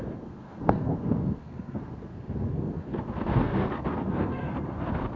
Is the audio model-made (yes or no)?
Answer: yes